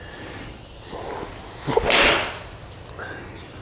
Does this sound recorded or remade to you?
recorded